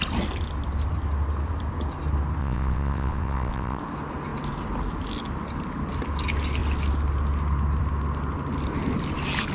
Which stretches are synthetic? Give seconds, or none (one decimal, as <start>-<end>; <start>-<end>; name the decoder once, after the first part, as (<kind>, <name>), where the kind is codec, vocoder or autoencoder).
2.4-3.8 (vocoder, WaveNeXt)